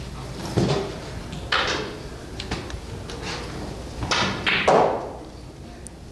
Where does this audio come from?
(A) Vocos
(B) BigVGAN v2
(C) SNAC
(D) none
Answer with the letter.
D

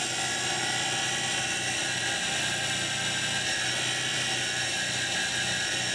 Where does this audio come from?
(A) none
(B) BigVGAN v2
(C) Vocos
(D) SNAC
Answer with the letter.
A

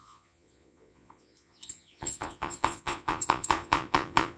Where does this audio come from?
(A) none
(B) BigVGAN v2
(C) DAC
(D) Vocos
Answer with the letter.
D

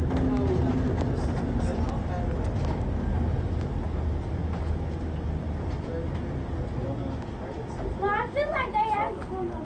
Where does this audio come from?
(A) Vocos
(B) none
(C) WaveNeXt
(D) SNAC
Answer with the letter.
B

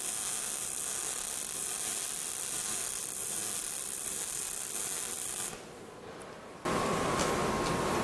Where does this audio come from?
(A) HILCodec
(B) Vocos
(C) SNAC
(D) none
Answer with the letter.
D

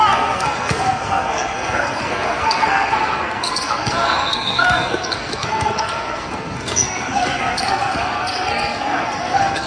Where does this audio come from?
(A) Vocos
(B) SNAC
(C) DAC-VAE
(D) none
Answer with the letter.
B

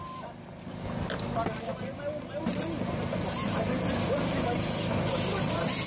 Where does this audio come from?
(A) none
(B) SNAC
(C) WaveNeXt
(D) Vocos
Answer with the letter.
A